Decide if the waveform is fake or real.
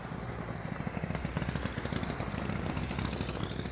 real